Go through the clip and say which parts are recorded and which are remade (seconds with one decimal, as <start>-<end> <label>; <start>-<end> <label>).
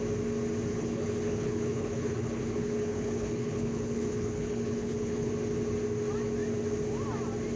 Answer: 0.0-0.7 recorded; 0.7-5.3 remade; 5.3-7.6 recorded